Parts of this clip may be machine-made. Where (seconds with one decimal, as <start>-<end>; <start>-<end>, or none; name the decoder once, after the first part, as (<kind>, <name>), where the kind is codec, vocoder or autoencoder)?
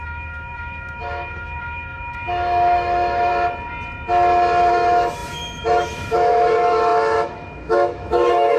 0.0-3.3 (autoencoder, DAC-VAE); 4.7-8.6